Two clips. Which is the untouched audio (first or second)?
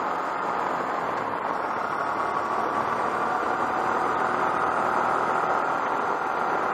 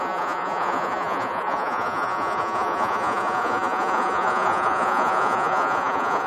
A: first